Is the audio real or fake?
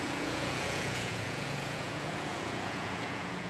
fake